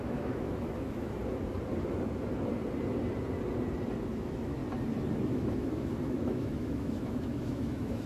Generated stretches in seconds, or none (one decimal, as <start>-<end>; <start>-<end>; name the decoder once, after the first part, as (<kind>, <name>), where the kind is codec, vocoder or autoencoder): 0.0-1.2 (autoencoder, DAC-VAE); 4.1-4.6; 5.3-8.1